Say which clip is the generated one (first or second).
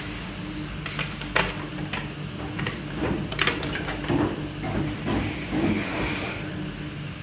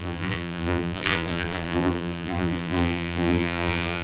second